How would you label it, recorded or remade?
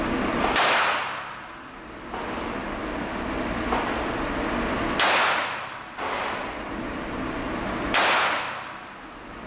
recorded